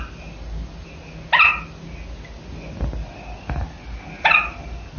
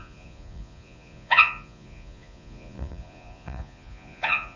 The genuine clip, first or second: first